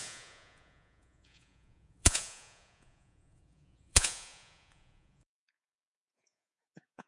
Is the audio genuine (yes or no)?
no